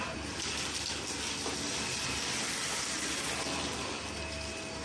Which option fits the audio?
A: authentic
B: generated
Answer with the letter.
A